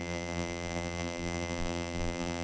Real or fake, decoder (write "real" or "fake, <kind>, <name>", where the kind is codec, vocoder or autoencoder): fake, vocoder, BigVGAN v2